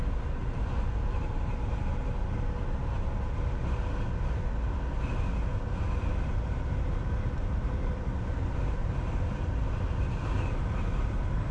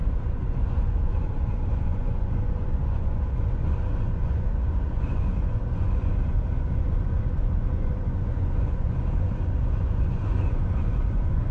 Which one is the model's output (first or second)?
second